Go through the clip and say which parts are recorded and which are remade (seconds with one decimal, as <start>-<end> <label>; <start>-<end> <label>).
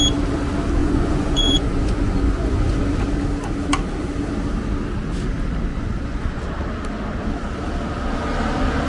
0.0-0.8 recorded; 0.8-2.8 remade; 2.8-5.7 recorded; 5.7-6.4 remade; 6.4-8.9 recorded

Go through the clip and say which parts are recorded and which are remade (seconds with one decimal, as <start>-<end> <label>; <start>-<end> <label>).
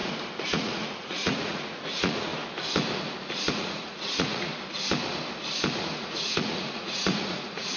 0.0-0.5 recorded; 0.5-2.3 remade; 2.3-3.5 recorded; 3.5-4.5 remade; 4.5-5.8 recorded; 5.8-7.8 remade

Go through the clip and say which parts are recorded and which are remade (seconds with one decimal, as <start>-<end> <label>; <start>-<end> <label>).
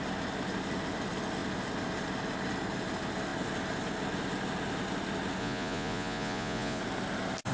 0.0-5.4 recorded; 5.4-6.8 remade; 6.8-7.5 recorded